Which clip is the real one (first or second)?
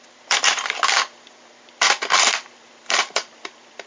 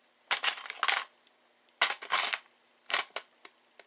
second